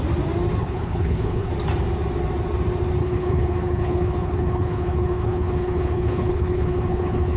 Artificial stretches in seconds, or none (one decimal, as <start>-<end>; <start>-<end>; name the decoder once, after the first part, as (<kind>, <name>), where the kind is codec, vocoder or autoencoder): 0.6-1.5 (codec, HILCodec); 3.0-7.4